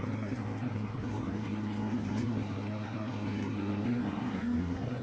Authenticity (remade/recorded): remade